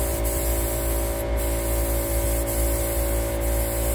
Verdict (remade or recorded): recorded